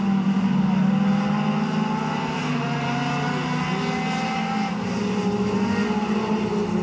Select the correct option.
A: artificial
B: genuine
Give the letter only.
B